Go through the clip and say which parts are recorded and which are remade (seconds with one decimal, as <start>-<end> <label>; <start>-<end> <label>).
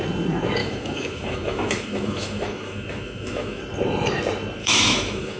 0.0-0.6 recorded; 0.6-3.6 remade; 3.6-4.6 recorded; 4.6-5.4 remade